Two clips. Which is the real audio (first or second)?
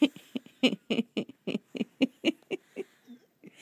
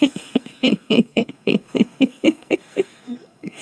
first